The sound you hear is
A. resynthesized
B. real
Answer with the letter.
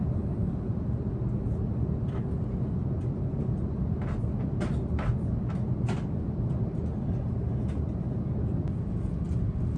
B